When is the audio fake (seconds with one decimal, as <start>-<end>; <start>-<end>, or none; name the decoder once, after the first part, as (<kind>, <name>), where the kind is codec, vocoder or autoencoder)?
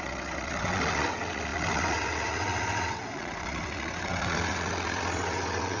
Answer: 0.0-5.8 (vocoder, WaveNeXt)